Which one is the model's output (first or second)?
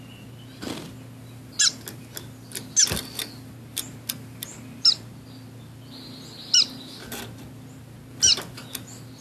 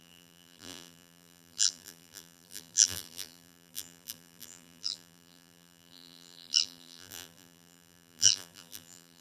second